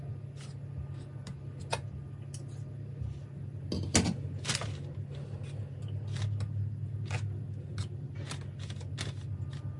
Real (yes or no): yes